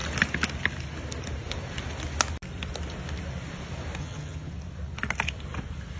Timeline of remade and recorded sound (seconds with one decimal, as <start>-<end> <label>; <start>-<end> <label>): 0.0-4.0 recorded; 4.0-4.5 remade; 4.5-6.0 recorded